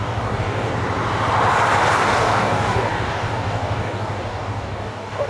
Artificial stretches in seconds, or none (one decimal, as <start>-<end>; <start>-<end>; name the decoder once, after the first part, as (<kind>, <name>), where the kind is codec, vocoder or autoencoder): 0.0-0.7 (codec, DAC); 2.0-5.3